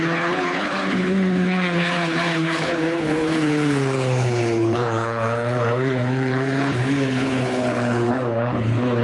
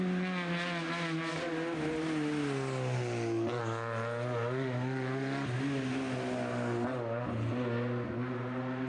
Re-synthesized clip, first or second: first